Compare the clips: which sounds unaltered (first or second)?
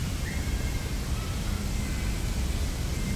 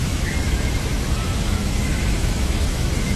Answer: first